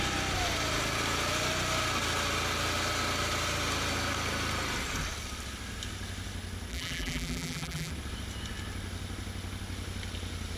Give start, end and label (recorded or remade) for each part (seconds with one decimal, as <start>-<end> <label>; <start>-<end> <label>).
0.0-6.7 recorded; 6.7-7.9 remade; 7.9-10.6 recorded